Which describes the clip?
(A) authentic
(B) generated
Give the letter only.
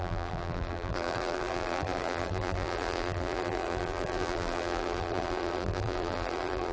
B